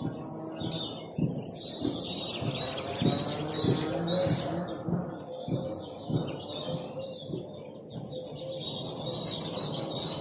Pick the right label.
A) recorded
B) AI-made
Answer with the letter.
A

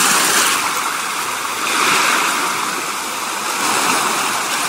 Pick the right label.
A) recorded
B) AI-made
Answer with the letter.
A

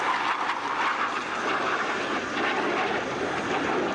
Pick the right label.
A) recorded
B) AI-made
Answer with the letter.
A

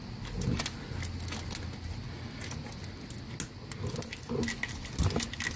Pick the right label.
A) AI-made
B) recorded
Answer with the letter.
B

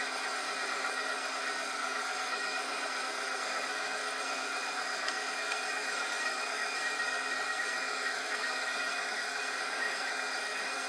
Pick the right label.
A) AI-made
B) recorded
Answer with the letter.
A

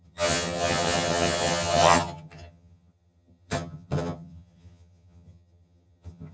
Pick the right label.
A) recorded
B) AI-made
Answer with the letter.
B